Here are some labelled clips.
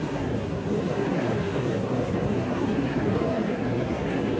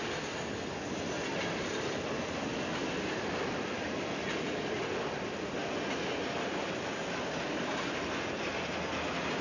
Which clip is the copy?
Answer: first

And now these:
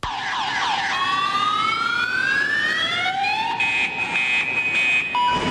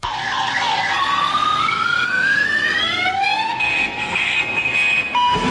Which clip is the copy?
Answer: second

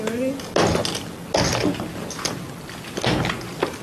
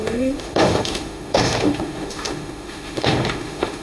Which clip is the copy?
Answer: second